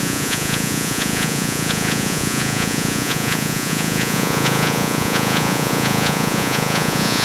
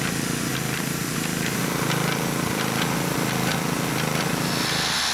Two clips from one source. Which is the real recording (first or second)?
second